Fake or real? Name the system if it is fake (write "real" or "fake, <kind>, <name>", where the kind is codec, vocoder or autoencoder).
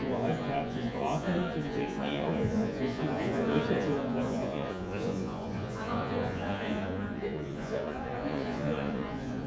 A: fake, vocoder, Vocos